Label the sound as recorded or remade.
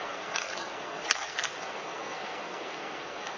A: remade